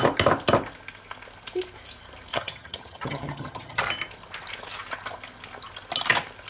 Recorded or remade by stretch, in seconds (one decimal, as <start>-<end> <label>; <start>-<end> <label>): 0.0-2.3 recorded; 2.3-3.8 remade; 3.8-6.5 recorded